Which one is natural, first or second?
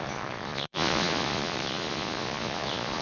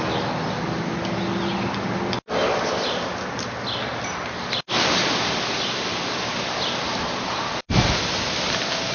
second